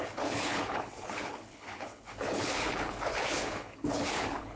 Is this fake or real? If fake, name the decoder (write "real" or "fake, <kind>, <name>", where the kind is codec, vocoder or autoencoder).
fake, codec, HILCodec